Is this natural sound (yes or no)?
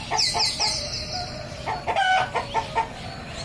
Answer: yes